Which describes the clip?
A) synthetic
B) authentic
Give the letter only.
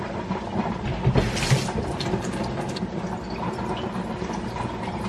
B